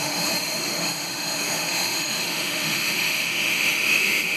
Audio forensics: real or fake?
fake